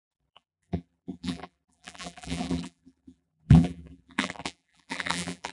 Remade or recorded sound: remade